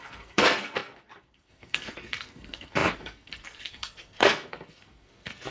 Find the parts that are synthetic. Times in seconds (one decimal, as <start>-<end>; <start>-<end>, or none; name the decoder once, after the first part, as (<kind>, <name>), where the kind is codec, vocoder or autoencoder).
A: 0.0-5.5 (codec, SNAC)